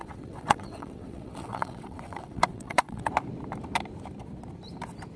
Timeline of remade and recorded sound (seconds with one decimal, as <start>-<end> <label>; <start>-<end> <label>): 0.0-3.1 remade; 3.1-5.2 recorded